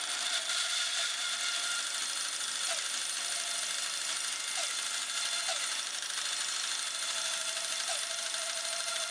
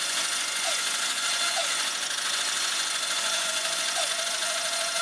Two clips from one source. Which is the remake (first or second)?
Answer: second